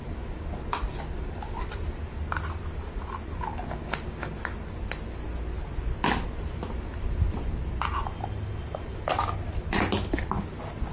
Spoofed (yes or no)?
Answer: no